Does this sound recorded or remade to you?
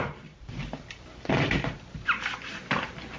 remade